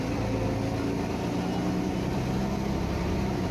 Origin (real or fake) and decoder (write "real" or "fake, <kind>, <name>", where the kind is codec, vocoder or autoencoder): real